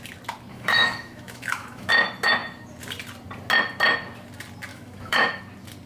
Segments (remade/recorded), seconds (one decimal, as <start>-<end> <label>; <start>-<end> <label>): 0.0-0.5 recorded; 0.5-1.9 remade; 1.9-4.7 recorded; 4.7-5.4 remade; 5.4-5.9 recorded